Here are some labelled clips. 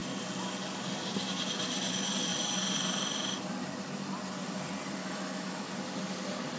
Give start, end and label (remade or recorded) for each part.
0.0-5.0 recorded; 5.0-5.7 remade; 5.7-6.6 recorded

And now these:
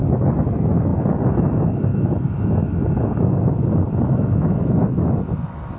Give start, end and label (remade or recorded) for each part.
0.0-5.8 recorded

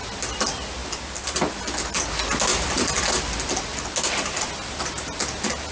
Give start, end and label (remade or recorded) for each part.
0.0-5.7 recorded

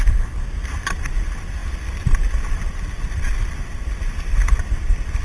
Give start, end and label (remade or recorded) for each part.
0.0-5.2 recorded

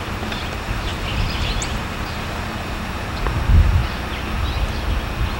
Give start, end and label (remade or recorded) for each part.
0.0-3.8 remade; 3.8-5.4 recorded

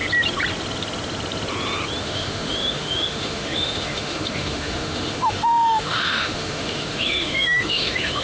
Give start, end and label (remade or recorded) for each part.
0.0-2.0 recorded; 2.0-8.2 remade

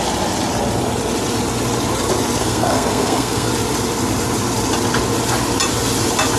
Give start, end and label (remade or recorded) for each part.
0.0-2.4 recorded; 2.4-3.5 remade; 3.5-6.4 recorded

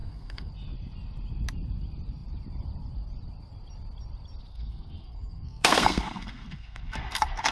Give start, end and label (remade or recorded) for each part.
0.0-0.5 remade; 0.5-4.5 recorded; 4.5-7.5 remade